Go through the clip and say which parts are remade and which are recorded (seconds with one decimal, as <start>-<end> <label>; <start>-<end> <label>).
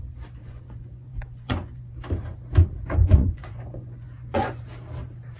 0.0-0.4 recorded; 0.4-1.9 remade; 1.9-3.0 recorded; 3.0-4.6 remade; 4.6-5.4 recorded